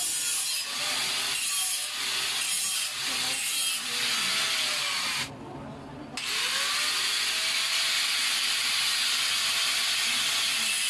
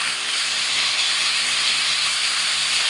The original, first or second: first